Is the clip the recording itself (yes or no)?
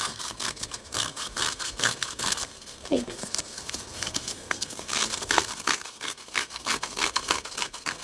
no